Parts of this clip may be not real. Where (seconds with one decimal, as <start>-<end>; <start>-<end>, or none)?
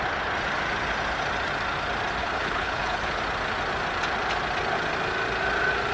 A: 2.2-3.2